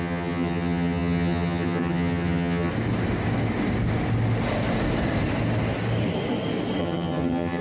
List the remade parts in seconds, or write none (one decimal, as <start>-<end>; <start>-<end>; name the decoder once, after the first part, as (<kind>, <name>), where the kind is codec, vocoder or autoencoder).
0.0-2.7 (vocoder, HiFi-GAN); 6.8-7.6